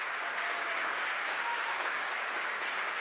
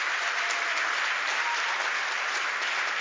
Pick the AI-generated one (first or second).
first